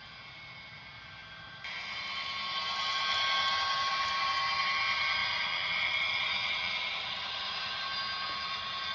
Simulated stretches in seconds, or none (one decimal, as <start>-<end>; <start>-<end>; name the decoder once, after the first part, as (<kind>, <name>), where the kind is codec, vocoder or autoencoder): 5.2-7.8 (vocoder, Vocos)